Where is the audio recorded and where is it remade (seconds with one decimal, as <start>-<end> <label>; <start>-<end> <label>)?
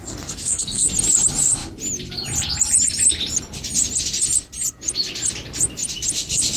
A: 0.0-0.9 remade; 0.9-6.6 recorded